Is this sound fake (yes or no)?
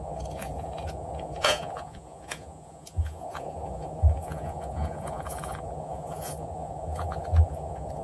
yes